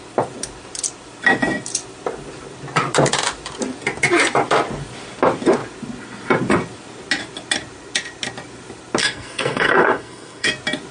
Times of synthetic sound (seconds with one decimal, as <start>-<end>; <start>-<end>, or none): 9.0-10.5